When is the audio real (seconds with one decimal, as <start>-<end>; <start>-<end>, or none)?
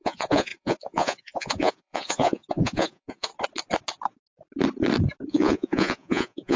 3.3-5.3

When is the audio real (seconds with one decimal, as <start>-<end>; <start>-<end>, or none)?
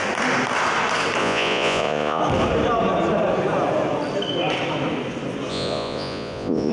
0.0-1.2; 2.2-5.5